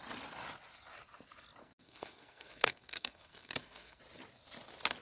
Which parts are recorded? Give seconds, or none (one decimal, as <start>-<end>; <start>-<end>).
0.0-1.6; 4.0-5.0